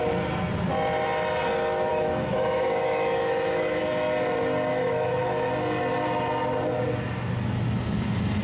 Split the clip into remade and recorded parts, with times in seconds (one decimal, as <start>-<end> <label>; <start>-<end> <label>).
0.0-1.9 recorded; 1.9-3.8 remade; 3.8-4.7 recorded; 4.7-5.5 remade; 5.5-8.4 recorded